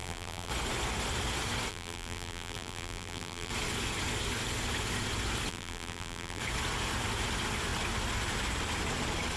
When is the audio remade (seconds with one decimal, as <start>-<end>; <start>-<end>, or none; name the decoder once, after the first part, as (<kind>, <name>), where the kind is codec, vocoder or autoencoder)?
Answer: 0.0-0.5 (vocoder, BigVGAN v2); 1.7-3.5; 5.5-6.4